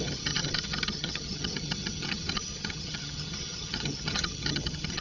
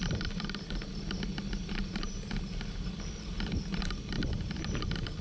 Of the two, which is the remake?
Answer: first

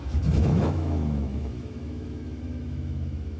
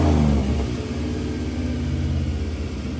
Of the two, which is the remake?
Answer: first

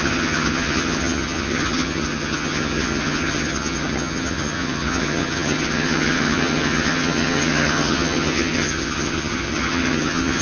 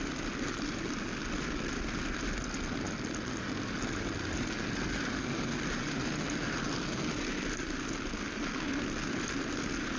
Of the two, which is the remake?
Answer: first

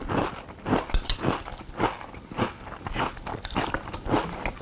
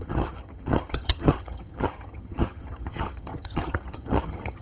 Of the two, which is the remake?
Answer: second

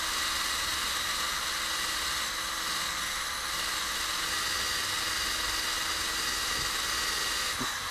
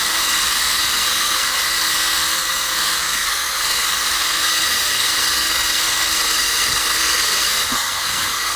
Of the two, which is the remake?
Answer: second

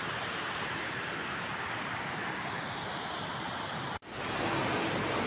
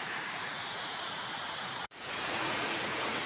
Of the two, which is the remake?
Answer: second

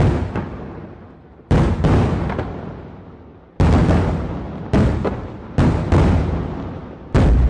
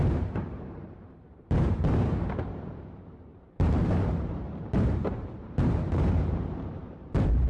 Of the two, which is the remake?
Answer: second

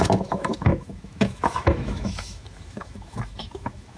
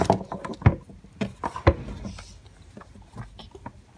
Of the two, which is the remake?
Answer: first